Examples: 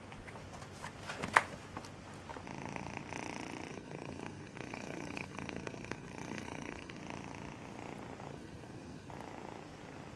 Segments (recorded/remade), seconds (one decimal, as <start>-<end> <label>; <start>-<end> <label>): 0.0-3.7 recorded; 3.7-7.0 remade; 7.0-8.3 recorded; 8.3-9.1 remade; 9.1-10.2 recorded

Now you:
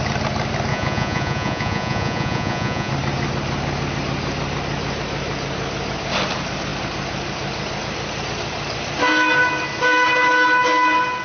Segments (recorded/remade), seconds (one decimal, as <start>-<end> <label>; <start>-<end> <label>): 0.0-0.7 recorded; 0.7-2.9 remade; 2.9-11.2 recorded

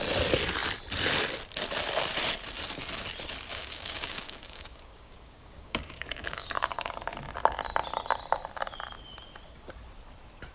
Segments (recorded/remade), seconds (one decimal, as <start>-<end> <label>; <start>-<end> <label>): 0.0-3.5 recorded; 3.5-6.9 remade; 6.9-10.5 recorded

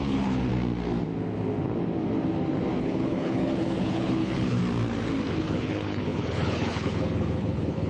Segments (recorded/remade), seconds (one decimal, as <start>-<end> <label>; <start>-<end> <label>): 0.0-0.5 remade; 0.5-2.8 recorded; 2.8-4.6 remade; 4.6-5.4 recorded; 5.4-7.9 remade

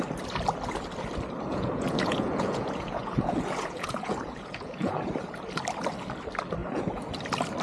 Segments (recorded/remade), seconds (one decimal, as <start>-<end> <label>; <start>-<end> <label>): 0.0-1.5 recorded; 1.5-5.1 remade; 5.1-6.6 recorded; 6.6-7.1 remade; 7.1-7.6 recorded

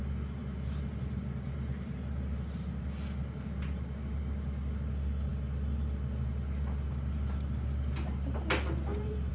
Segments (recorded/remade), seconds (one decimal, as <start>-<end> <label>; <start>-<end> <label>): 0.0-9.3 recorded

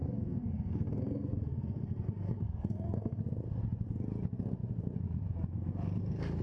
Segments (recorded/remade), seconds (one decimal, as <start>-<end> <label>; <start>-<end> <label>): 0.0-3.2 remade; 3.2-6.4 recorded